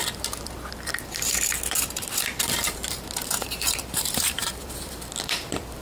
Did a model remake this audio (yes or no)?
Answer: yes